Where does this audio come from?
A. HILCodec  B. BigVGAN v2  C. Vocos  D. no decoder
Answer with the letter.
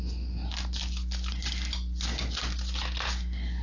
D